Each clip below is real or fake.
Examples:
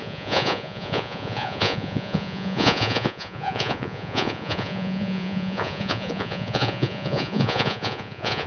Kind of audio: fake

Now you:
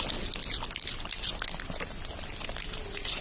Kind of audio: real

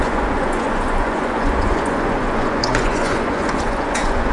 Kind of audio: fake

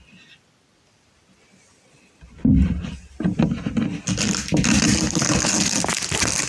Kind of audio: real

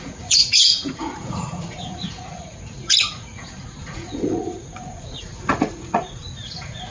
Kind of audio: fake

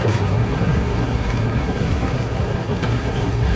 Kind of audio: fake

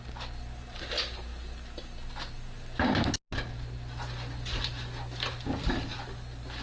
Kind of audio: real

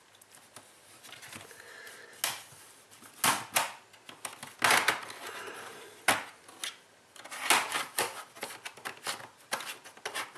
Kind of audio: real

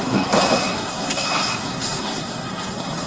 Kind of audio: fake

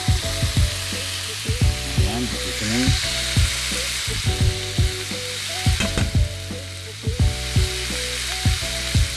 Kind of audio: real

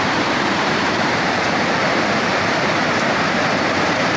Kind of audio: fake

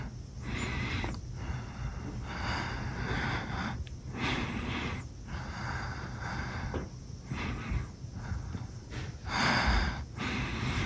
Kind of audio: real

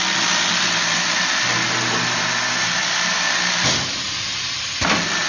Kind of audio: real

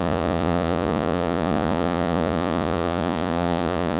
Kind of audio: fake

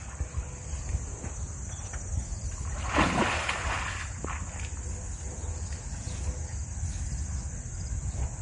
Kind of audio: real